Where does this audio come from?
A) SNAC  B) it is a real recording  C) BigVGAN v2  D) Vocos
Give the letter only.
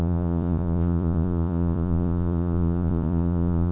D